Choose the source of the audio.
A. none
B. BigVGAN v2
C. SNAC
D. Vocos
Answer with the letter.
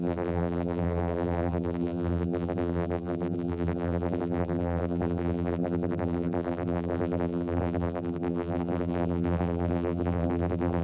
B